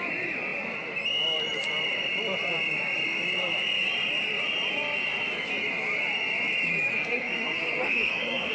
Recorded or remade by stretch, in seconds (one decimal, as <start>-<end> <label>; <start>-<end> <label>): 0.0-6.9 recorded; 6.9-8.5 remade